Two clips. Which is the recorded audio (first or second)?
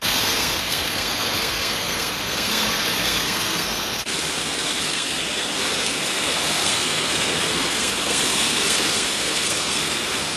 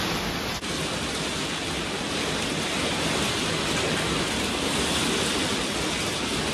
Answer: second